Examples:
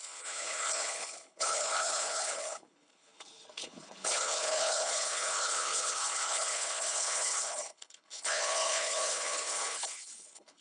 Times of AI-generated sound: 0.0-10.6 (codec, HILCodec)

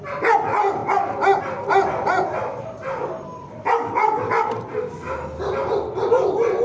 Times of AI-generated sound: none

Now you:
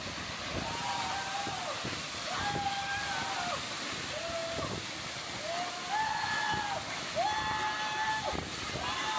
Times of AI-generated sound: none

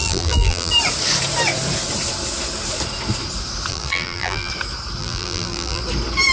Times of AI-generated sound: 0.0-0.7 (vocoder, BigVGAN v2); 3.7-4.5; 5.0-5.8

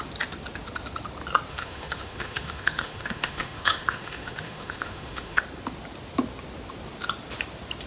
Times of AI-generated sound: 1.5-5.4 (autoencoder, DAC-VAE)

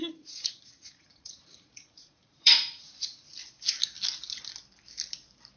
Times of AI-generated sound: 0.0-3.3 (vocoder, Vocos)

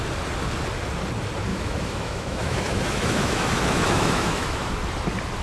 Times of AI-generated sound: 1.5-4.7 (autoencoder, DAC-VAE)